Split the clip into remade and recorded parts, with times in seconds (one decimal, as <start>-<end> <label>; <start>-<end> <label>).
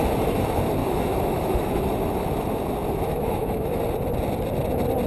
0.0-0.8 recorded; 0.8-1.8 remade; 1.8-3.1 recorded; 3.1-3.8 remade; 3.8-5.1 recorded